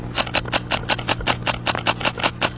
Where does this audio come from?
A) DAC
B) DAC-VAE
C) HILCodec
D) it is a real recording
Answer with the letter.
D